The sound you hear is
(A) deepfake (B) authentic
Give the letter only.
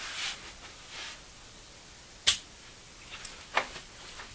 B